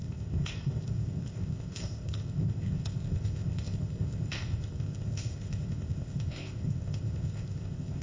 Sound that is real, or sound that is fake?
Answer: fake